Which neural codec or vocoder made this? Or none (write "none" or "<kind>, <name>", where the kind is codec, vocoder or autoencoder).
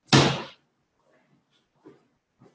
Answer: none